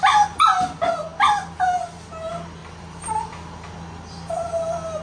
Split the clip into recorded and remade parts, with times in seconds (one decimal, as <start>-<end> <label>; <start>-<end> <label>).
0.0-2.6 recorded; 2.6-3.3 remade; 3.3-5.0 recorded